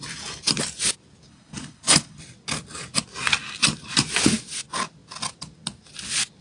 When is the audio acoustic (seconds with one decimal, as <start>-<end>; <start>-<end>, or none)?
0.0-1.3; 2.2-6.4